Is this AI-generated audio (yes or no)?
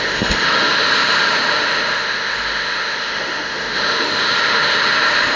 yes